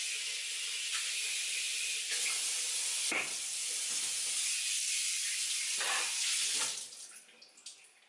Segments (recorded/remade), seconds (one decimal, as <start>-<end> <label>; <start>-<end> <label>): 0.0-8.1 recorded